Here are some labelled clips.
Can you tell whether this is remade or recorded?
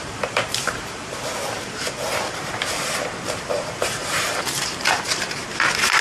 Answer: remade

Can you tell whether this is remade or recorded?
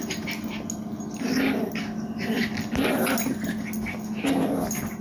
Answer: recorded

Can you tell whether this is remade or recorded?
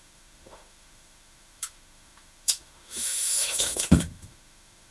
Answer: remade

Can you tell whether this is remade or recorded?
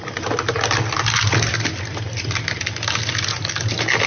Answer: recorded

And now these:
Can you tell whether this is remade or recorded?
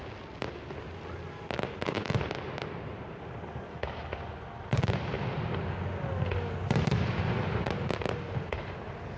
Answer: recorded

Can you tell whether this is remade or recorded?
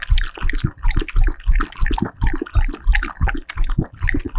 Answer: recorded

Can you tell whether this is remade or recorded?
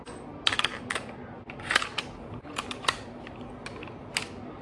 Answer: recorded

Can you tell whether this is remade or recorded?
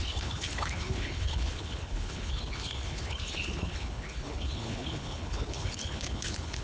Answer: remade